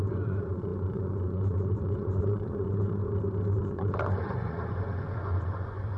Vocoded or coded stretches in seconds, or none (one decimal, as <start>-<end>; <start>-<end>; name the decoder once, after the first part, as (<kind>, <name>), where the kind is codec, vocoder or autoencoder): 0.0-3.0 (vocoder, Vocos); 3.5-6.0